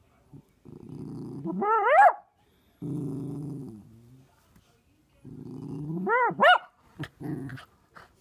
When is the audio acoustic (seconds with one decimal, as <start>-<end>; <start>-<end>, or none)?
0.0-8.2

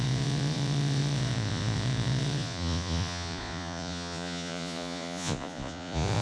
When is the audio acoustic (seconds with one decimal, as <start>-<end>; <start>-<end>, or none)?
none

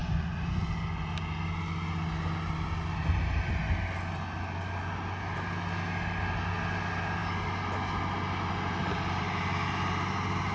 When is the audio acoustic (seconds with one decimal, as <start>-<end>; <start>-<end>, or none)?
0.6-10.5

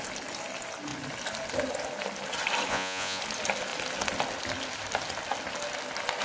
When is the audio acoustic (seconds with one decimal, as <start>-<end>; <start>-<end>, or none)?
0.0-2.7; 3.2-6.2

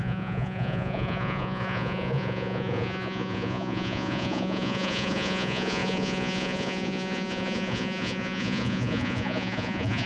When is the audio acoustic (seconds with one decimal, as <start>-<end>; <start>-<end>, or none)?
none

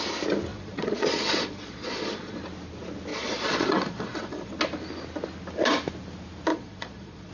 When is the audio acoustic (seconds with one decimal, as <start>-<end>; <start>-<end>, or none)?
0.0-0.5; 2.4-3.1; 4.5-6.5

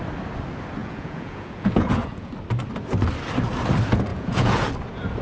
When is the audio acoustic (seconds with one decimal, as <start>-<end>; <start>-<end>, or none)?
0.0-0.8; 2.3-4.1; 4.7-5.2

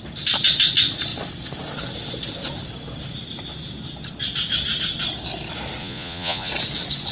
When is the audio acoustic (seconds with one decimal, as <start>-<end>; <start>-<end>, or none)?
0.0-5.8; 6.5-7.1